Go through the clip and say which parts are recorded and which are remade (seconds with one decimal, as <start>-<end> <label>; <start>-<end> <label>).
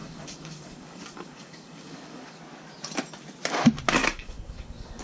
0.0-2.4 remade; 2.4-4.0 recorded; 4.0-5.0 remade